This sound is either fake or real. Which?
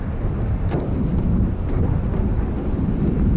fake